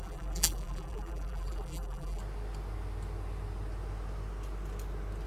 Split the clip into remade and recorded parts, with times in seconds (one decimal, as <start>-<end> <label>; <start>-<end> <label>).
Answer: 0.0-2.2 remade; 2.2-5.3 recorded